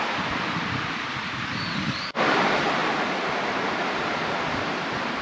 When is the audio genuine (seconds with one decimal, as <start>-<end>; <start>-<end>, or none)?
1.1-2.2; 2.8-3.5